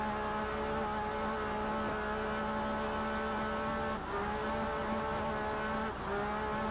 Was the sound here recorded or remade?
recorded